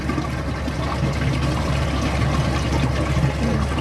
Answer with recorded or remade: recorded